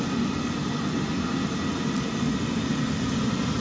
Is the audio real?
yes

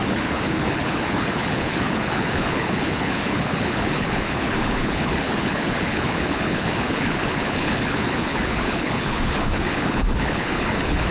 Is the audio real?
no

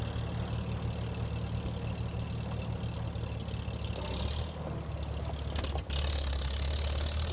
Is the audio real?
yes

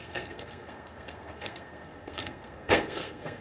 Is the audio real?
no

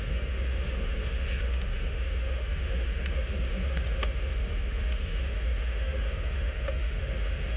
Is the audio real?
no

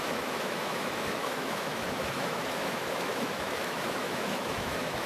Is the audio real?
no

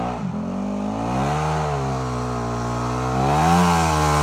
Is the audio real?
yes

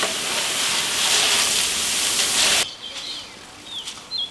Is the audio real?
yes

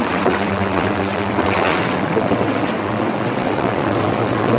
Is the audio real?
no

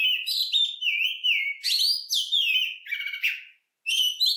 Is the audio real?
yes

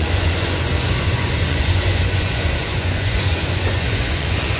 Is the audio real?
no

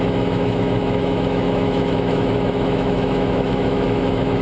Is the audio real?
no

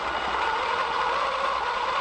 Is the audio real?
yes